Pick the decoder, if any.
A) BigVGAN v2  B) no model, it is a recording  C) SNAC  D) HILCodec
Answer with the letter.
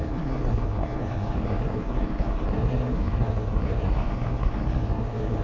C